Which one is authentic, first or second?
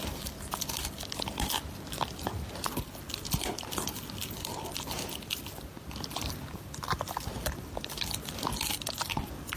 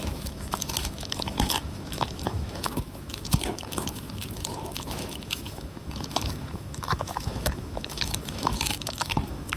first